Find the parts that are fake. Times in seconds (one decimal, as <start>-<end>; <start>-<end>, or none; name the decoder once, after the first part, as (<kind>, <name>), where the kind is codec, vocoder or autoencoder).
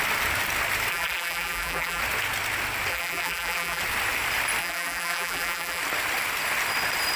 0.9-2.0 (vocoder, BigVGAN v2); 2.9-3.8; 4.6-5.8